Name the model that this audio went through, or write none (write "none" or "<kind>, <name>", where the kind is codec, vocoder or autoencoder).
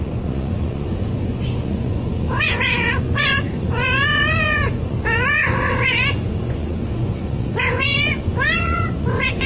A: vocoder, Vocos